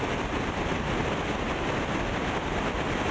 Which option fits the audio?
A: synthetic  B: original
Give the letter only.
B